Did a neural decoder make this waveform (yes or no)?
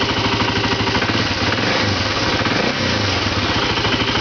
no